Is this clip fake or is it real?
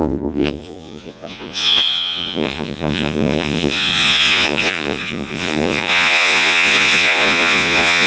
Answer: fake